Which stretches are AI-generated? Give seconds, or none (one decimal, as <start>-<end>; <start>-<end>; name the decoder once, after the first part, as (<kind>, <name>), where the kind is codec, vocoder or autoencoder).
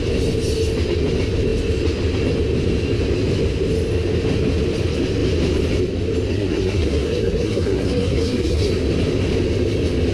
6.3-8.7 (codec, SNAC)